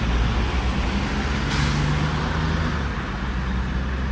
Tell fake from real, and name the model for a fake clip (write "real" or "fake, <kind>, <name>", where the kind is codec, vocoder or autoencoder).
real